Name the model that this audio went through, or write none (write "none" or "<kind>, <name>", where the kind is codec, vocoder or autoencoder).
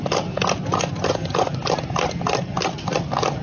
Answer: none